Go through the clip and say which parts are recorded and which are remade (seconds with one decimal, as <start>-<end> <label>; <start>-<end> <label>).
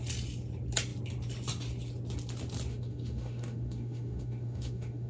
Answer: 0.0-2.7 recorded; 2.7-5.1 remade